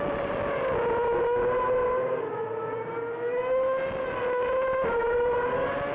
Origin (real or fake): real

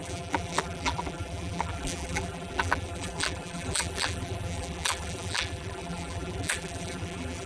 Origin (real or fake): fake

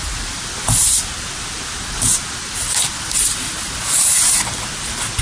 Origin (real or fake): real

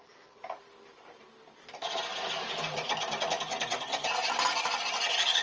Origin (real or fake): real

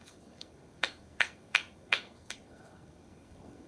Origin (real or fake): fake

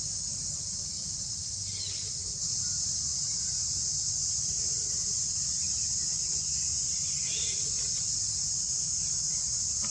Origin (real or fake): real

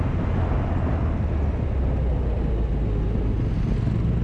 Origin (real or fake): real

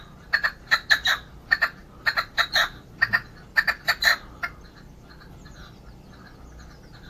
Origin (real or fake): real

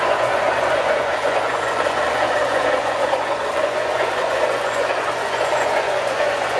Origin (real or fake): fake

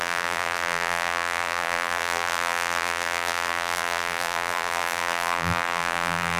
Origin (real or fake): fake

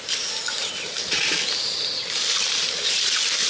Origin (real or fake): real